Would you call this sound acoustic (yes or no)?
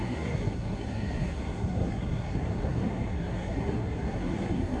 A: no